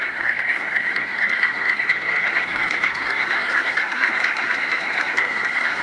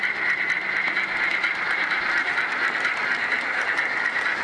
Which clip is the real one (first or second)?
second